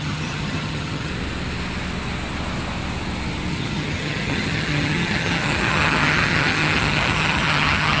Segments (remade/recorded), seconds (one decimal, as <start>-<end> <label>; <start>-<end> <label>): 0.0-1.1 remade; 1.1-3.5 recorded; 3.5-8.0 remade